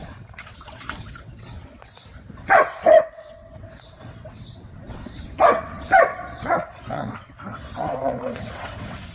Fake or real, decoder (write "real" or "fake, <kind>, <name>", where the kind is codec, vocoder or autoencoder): fake, vocoder, WaveNeXt